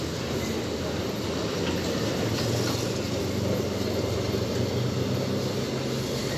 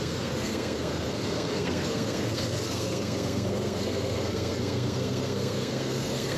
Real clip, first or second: first